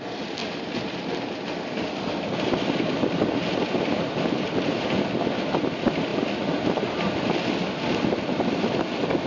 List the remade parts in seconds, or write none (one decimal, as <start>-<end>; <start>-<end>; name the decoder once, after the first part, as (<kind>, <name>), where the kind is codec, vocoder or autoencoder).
none